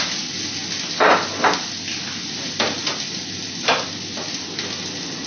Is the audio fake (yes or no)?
no